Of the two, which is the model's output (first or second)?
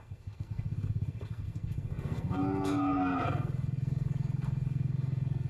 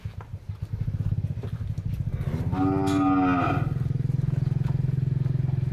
first